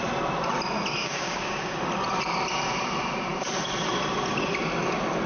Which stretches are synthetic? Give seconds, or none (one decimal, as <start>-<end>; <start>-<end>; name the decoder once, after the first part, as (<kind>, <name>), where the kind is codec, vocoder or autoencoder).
1.0-1.8 (codec, DAC)